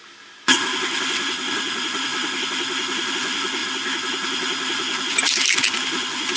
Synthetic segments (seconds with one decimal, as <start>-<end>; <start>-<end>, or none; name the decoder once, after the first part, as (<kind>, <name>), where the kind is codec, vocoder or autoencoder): none